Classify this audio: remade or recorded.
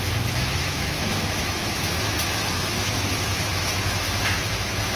remade